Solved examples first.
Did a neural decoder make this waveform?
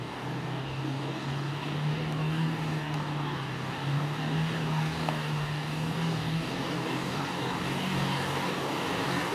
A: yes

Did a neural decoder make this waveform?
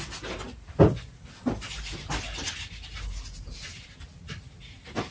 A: no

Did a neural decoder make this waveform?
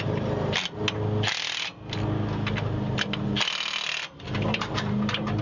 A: no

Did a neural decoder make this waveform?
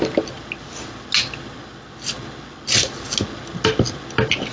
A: no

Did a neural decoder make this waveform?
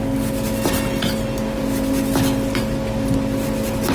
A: no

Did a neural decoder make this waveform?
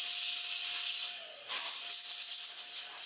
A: no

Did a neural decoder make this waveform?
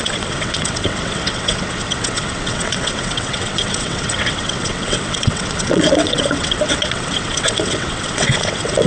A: yes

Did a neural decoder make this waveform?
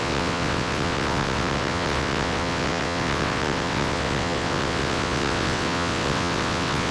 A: yes